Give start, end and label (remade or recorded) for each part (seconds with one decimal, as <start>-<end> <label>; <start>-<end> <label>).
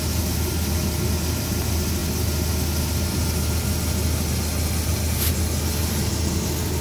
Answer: 0.0-6.8 recorded